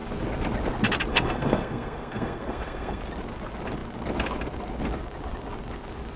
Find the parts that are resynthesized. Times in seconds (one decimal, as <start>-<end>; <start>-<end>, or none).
1.1-3.0